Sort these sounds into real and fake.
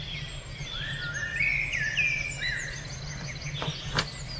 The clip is real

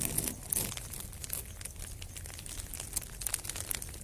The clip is real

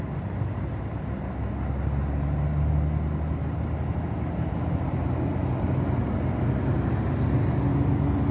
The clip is real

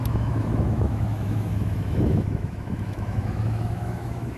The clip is fake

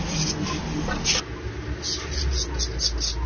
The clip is real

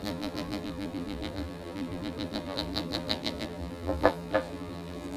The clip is fake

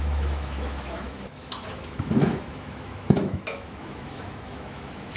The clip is fake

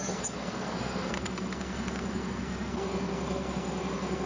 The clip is fake